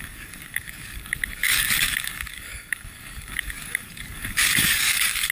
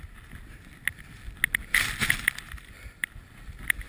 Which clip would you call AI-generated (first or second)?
first